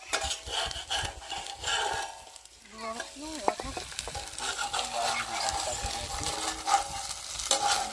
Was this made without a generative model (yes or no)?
yes